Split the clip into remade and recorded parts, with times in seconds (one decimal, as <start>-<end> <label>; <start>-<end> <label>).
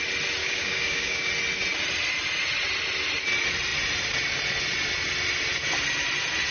0.0-0.4 recorded; 0.4-1.3 remade; 1.3-6.5 recorded